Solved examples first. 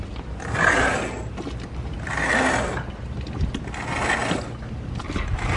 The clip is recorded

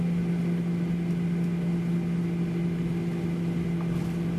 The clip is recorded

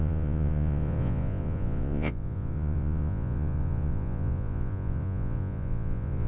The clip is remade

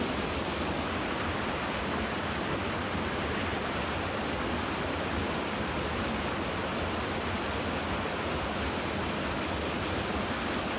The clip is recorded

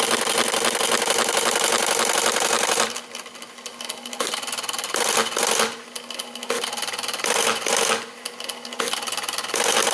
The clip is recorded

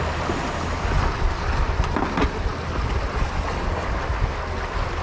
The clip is recorded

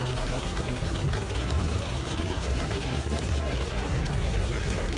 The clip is remade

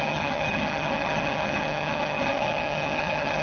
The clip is remade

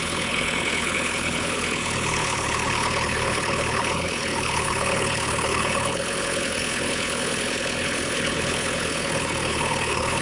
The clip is remade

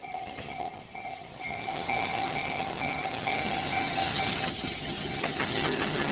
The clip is remade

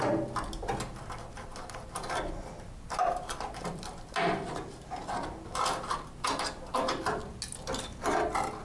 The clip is recorded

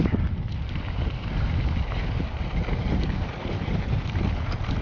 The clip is recorded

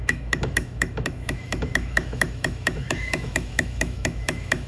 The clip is remade